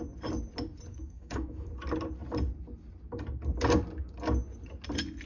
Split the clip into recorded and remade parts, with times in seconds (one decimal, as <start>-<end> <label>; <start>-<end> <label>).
0.0-0.9 recorded; 0.9-1.7 remade; 1.7-5.3 recorded